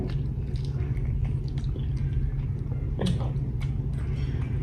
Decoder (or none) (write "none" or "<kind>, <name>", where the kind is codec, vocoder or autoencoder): none